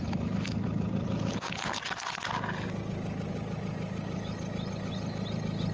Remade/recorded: recorded